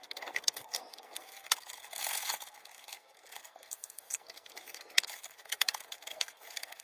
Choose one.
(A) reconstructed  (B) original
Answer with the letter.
A